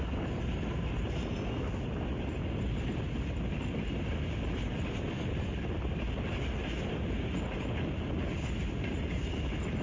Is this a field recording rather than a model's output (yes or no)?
yes